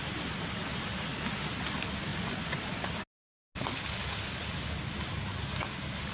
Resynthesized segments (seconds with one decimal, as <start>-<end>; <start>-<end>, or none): 2.1-2.6